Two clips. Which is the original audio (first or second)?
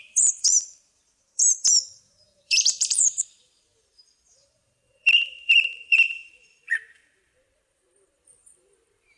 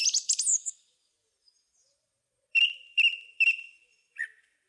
second